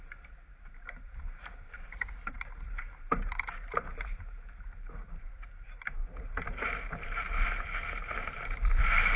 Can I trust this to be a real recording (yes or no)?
no